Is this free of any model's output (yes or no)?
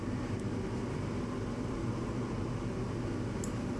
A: yes